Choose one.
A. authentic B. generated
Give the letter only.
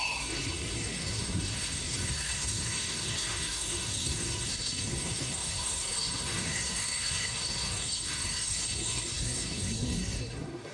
B